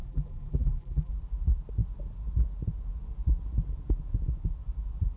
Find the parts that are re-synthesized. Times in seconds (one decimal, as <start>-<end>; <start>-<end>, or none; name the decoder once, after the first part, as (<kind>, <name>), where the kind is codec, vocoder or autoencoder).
0.0-1.1 (vocoder, BigVGAN v2)